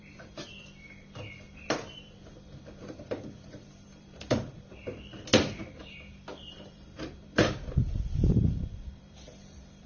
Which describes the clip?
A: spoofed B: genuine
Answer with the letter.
A